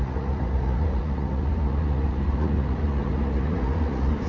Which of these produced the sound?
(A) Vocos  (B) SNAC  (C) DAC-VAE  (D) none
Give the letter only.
A